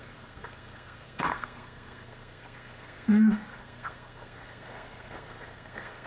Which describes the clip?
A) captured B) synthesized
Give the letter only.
B